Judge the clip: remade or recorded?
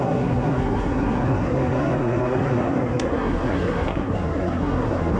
remade